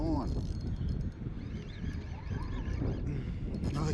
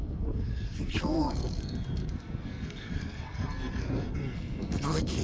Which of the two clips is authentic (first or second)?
first